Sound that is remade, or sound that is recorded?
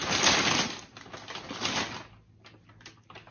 recorded